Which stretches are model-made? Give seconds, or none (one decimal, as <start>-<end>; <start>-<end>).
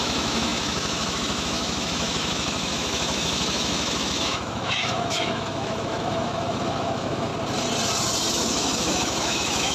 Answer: 0.0-7.3; 8.3-9.7